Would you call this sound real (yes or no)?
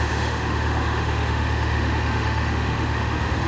no